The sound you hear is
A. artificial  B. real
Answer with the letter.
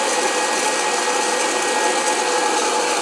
B